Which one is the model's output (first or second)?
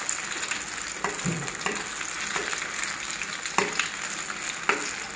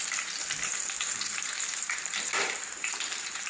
second